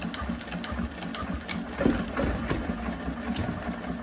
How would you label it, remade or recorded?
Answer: recorded